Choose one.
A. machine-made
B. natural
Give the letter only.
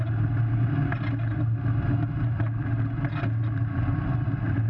B